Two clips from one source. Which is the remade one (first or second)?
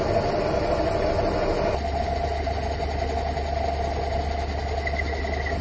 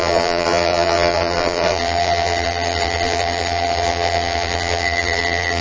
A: second